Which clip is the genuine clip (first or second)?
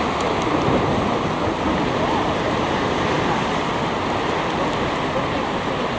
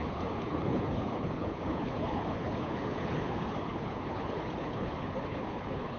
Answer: first